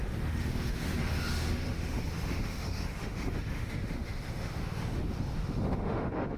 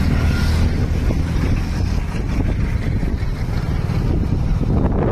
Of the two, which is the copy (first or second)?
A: first